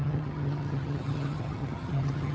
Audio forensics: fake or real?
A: fake